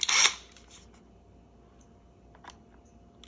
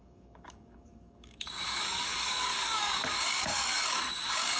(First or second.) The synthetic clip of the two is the second